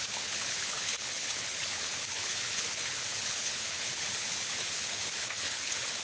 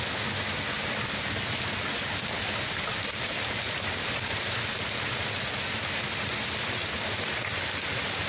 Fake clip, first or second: first